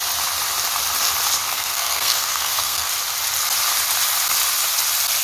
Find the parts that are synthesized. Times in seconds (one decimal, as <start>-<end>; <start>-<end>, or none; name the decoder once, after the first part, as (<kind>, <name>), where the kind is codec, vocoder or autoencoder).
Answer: 1.5-2.9 (codec, SNAC)